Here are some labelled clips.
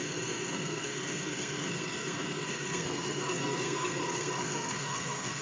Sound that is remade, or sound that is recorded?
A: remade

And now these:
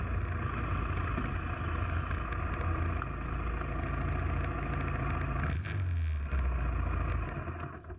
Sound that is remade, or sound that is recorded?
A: recorded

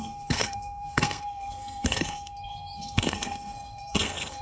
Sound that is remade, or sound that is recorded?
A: remade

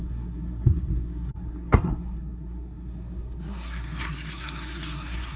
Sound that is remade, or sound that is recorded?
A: remade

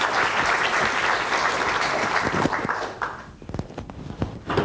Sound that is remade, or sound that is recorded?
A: recorded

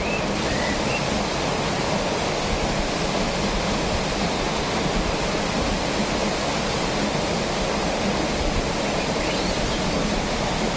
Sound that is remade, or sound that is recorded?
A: recorded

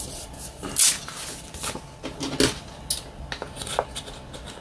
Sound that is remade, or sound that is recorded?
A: recorded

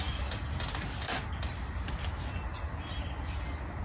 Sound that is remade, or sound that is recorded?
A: recorded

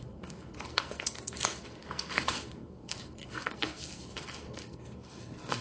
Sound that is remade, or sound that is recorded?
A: remade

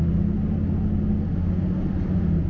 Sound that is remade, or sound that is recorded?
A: recorded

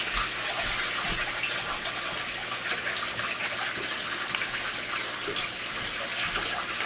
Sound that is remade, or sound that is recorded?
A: recorded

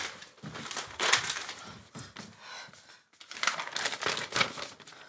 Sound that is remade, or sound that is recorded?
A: recorded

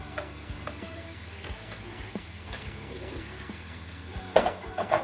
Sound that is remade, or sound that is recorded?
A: remade